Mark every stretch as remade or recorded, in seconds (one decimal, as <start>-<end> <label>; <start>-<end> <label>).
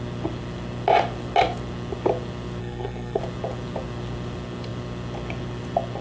0.0-2.6 recorded; 2.6-3.2 remade; 3.2-6.0 recorded